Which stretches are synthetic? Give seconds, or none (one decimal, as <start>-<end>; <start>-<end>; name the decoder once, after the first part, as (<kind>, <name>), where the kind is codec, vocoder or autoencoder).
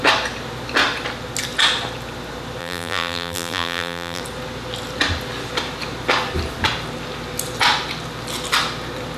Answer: 2.6-4.2 (vocoder, BigVGAN v2)